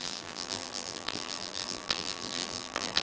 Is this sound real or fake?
fake